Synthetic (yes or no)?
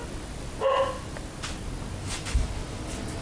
no